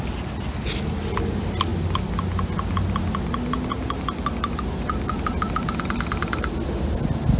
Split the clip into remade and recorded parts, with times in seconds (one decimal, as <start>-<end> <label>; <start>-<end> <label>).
0.0-7.4 recorded